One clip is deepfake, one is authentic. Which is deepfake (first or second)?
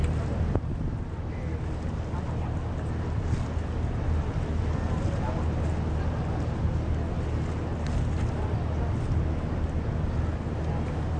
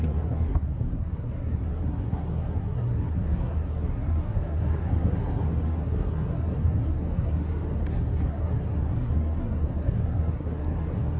second